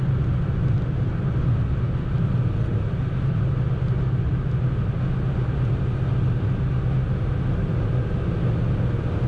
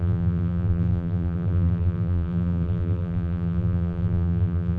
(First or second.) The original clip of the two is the first